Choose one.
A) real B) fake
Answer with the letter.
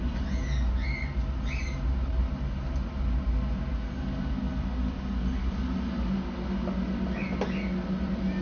A